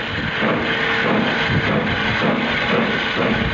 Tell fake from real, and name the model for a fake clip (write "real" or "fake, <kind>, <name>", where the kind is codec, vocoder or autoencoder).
real